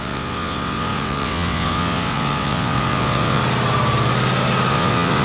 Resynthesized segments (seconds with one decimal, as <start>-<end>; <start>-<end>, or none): 0.0-3.4; 4.7-5.2